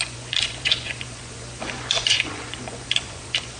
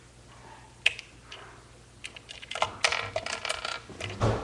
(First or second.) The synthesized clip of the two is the first